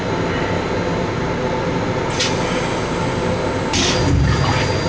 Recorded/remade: recorded